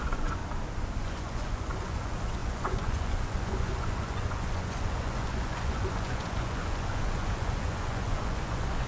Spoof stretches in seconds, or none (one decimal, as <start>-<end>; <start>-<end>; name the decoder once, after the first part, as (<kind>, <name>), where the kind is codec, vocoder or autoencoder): 0.0-0.4 (vocoder, Vocos); 1.0-8.9